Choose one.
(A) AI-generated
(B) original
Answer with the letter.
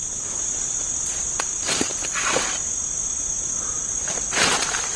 B